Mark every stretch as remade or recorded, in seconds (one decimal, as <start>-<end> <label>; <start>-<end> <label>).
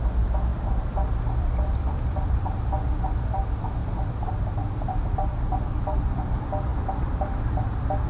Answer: 0.0-0.5 recorded; 0.5-2.3 remade; 2.3-8.1 recorded